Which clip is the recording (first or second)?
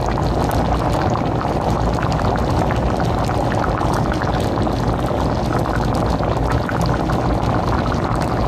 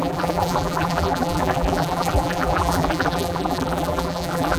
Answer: first